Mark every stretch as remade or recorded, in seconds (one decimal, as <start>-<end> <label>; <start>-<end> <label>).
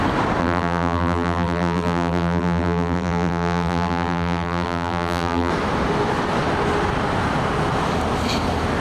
0.0-0.4 recorded; 0.4-5.5 remade; 5.5-8.8 recorded